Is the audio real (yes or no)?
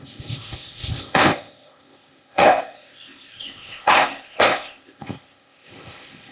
no